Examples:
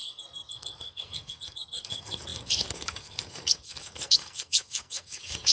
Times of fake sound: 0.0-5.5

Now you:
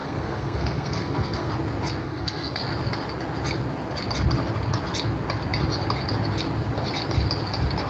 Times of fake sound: 0.0-1.5; 2.0-2.6

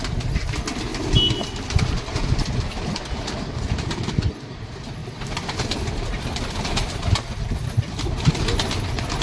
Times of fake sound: 0.9-2.6; 5.0-8.3

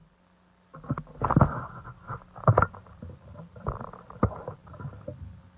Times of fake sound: none

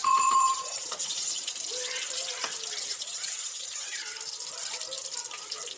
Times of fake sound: 0.0-1.5; 2.9-4.0

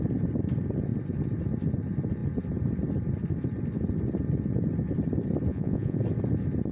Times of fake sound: 5.5-6.0

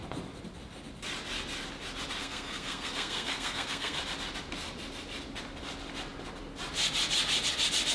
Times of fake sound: 2.2-4.0

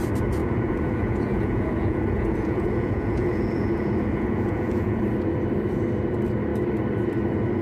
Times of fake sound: 0.4-5.0